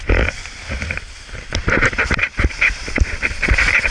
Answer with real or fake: fake